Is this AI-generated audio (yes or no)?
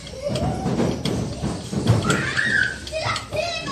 yes